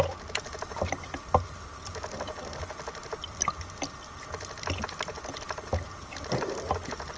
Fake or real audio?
real